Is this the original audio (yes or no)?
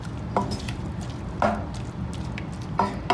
yes